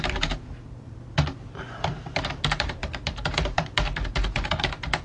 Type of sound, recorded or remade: remade